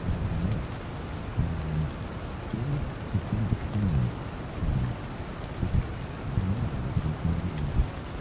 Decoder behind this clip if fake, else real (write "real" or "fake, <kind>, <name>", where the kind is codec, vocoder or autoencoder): real